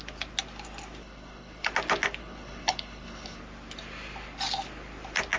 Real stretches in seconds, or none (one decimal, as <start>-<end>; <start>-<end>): 0.0-1.0; 1.7-2.2; 3.4-5.4